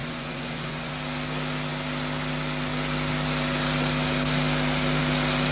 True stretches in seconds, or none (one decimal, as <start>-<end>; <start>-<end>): 0.9-5.5